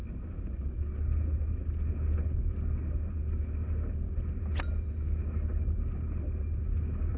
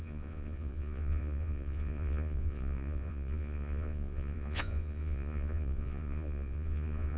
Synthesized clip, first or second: second